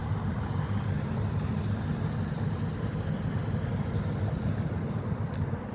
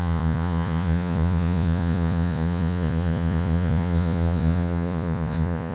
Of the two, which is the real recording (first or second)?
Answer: first